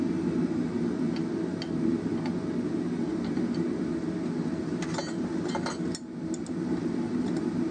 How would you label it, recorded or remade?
recorded